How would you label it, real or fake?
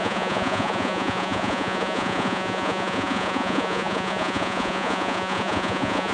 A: fake